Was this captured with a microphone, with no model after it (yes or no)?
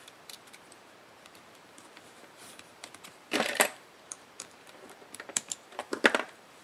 no